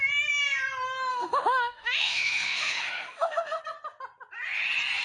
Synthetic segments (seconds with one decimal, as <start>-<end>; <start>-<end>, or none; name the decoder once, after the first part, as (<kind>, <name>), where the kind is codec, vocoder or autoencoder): 1.1-3.6 (autoencoder, DAC-VAE)